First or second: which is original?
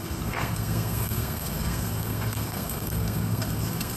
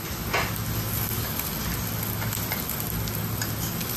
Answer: second